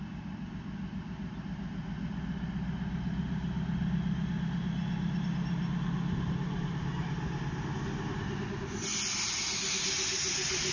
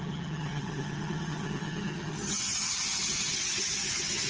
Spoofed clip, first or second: second